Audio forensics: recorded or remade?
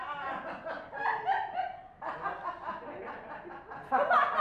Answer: recorded